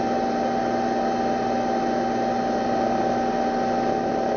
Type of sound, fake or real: real